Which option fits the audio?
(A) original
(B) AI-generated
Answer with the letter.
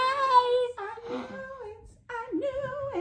A